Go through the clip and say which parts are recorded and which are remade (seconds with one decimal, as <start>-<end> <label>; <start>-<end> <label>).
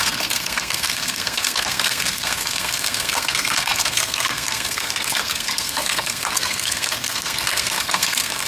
0.0-8.5 remade